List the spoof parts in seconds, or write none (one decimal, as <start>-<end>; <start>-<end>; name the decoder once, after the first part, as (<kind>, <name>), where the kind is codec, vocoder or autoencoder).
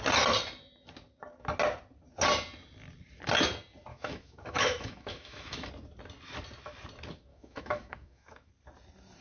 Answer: 3.9-5.7 (autoencoder, DAC-VAE); 7.3-8.5